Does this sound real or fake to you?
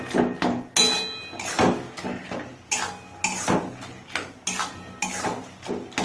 real